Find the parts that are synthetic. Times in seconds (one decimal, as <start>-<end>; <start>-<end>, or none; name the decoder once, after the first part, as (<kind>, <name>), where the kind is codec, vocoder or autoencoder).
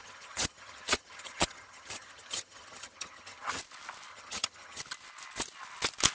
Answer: 0.0-3.6 (vocoder, HiFi-GAN); 4.1-4.8